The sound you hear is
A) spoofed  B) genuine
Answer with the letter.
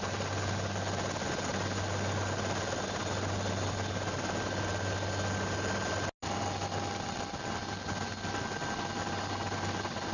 B